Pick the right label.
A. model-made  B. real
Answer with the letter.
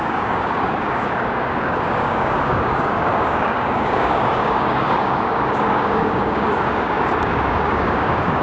A